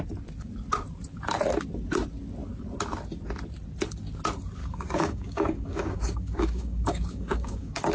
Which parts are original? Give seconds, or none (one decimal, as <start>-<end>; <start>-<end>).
0.0-4.6